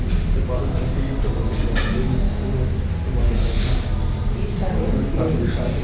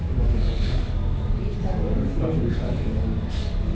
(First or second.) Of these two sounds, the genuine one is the first